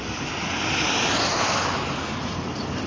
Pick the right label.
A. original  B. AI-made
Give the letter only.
A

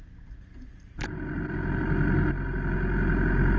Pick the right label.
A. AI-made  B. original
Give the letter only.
B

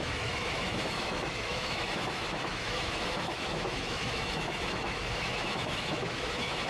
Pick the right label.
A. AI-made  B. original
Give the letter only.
A